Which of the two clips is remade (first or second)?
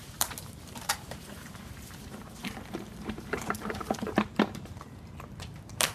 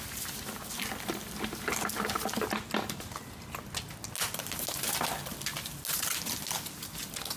first